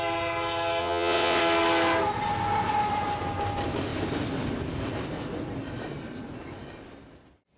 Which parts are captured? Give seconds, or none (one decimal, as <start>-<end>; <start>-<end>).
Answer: 0.0-0.8; 1.4-7.6